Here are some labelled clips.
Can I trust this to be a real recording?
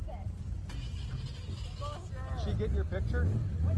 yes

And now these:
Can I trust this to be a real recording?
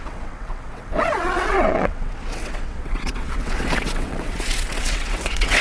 no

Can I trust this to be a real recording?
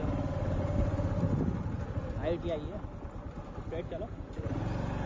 yes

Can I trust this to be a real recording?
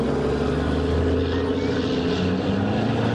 yes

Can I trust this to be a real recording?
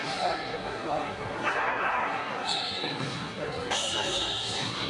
no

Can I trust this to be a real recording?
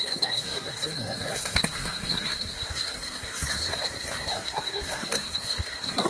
no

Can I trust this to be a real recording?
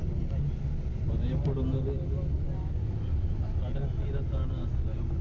yes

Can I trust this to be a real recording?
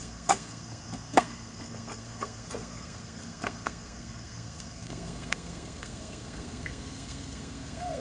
no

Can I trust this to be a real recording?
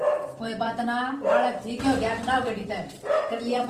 no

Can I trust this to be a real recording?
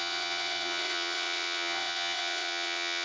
no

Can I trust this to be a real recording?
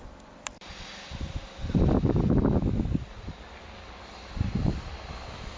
yes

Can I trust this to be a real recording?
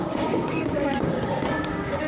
no